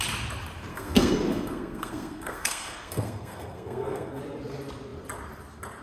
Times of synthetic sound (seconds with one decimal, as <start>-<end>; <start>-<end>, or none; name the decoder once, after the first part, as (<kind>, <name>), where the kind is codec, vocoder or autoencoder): 0.7-4.2 (codec, SNAC)